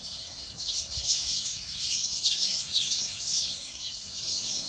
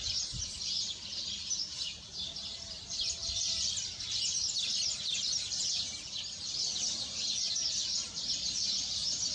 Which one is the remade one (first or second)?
first